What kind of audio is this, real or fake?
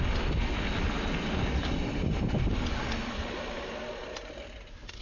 real